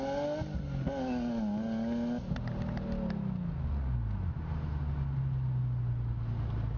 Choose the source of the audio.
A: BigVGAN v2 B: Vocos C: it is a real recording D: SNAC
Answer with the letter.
C